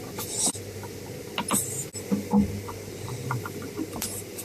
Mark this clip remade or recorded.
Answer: recorded